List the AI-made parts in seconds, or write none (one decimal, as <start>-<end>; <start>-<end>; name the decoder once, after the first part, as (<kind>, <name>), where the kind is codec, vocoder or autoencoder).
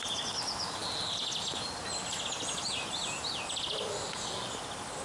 none